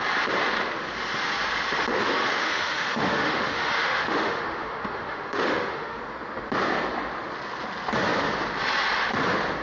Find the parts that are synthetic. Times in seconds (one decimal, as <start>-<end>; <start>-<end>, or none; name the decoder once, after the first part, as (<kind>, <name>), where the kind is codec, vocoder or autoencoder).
1.9-6.0 (autoencoder, DAC-VAE)